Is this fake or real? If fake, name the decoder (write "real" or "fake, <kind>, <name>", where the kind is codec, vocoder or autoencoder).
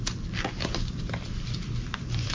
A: fake, vocoder, BigVGAN v2